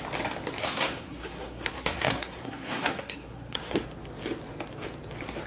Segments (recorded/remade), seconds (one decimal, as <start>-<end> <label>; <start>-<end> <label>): 0.0-0.6 recorded; 0.6-3.8 remade; 3.8-5.5 recorded

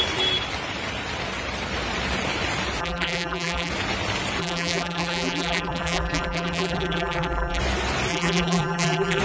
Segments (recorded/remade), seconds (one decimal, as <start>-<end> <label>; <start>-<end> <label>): 0.0-2.8 recorded; 2.8-3.7 remade; 3.7-4.4 recorded; 4.4-7.6 remade; 7.6-8.1 recorded; 8.1-9.2 remade

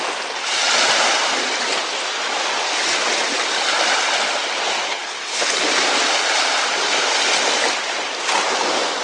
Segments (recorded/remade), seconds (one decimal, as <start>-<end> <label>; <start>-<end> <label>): 0.0-4.9 recorded; 4.9-5.6 remade; 5.6-9.0 recorded

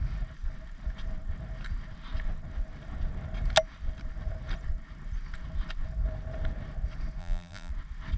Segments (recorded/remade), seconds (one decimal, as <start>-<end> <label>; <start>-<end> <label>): 0.0-7.2 recorded; 7.2-7.7 remade; 7.7-8.2 recorded